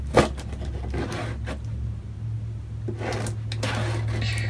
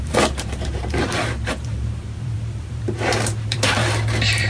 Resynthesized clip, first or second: second